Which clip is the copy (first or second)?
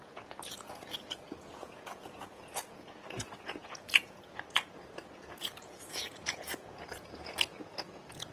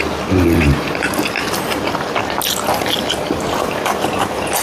first